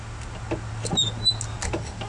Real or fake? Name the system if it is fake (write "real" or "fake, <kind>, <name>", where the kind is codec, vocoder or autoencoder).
real